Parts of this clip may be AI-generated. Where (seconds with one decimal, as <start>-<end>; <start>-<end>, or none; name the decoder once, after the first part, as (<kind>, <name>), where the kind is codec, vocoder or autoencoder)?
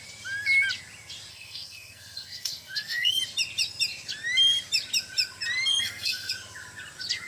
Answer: 1.3-3.2 (codec, SNAC); 5.7-6.3